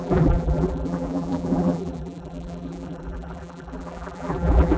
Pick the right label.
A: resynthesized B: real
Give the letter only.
A